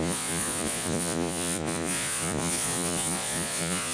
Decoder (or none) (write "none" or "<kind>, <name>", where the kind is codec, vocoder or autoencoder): vocoder, Vocos